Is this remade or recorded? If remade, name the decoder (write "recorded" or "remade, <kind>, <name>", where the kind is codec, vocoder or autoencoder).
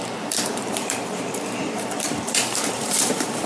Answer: remade, vocoder, BigVGAN v2